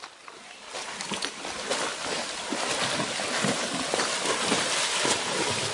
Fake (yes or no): no